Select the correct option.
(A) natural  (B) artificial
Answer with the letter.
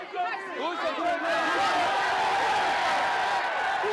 A